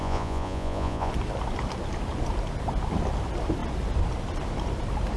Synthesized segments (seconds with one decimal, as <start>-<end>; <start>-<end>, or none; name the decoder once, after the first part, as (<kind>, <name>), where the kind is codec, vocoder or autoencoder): 0.0-1.1 (vocoder, Vocos)